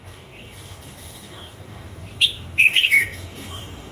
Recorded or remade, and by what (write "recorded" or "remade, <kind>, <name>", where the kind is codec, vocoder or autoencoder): remade, codec, DAC